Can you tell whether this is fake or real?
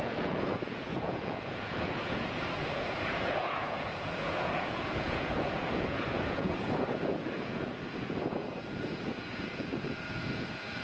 fake